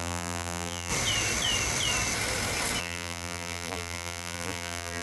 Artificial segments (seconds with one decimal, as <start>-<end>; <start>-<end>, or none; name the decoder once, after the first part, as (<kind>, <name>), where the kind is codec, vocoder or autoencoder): 0.0-0.9 (vocoder, BigVGAN v2); 2.8-5.0